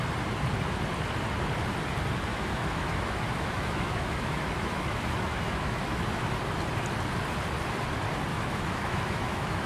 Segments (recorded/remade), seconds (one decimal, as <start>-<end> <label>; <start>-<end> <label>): 0.0-2.3 recorded; 2.3-6.2 remade; 6.2-8.3 recorded; 8.3-9.7 remade